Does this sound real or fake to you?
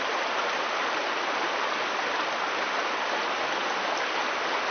real